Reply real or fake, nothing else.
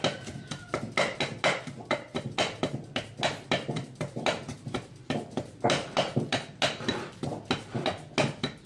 real